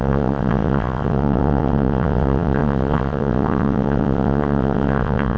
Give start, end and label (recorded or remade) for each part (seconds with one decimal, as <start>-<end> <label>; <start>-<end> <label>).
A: 0.0-5.4 remade